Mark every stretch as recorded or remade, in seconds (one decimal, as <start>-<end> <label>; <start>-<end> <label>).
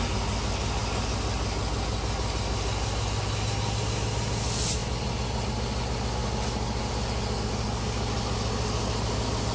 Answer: 0.0-9.5 recorded